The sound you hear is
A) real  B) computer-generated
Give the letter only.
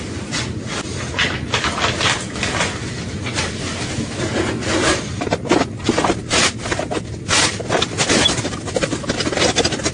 A